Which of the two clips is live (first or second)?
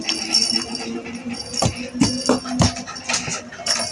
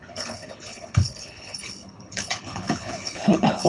first